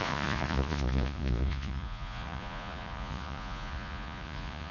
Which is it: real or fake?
fake